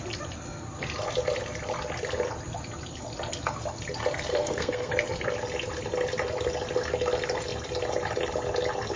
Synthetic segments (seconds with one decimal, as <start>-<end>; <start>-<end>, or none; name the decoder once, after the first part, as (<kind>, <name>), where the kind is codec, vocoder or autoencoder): 4.3-4.9 (codec, SNAC)